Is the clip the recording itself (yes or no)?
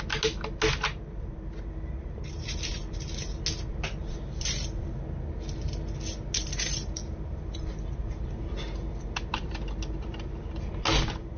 yes